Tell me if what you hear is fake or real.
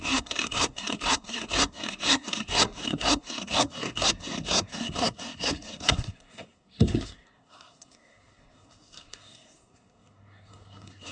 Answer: fake